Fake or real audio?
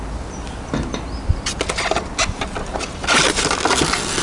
real